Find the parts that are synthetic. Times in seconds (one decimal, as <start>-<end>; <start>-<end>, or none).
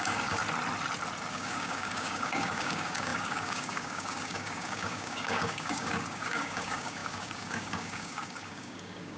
0.0-0.4; 1.3-9.2